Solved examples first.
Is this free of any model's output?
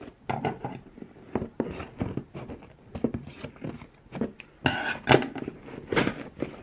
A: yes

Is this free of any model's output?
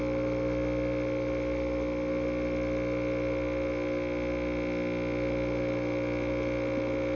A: yes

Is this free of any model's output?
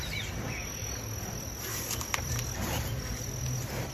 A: no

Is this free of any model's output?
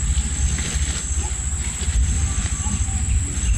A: yes